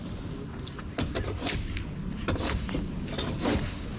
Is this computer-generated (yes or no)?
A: no